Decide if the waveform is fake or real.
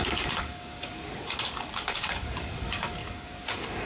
fake